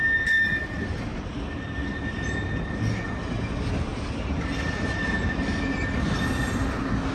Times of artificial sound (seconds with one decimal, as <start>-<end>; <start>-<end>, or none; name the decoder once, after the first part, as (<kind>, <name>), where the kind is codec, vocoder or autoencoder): none